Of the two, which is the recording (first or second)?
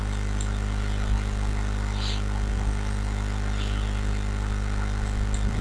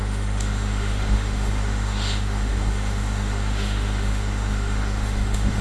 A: first